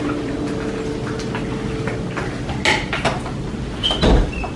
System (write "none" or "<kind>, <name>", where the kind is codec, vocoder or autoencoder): none